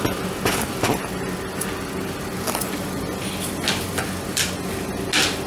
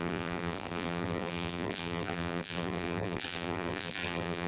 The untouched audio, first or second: first